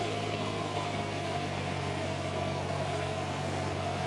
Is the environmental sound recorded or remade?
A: remade